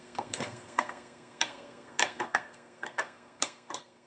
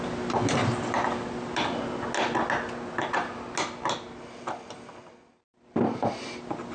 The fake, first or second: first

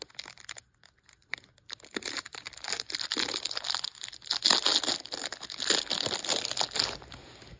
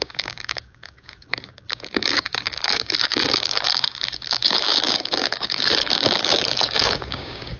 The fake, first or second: second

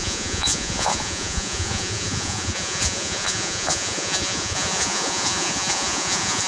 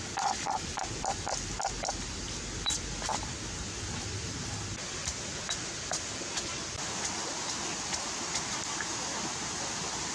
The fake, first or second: first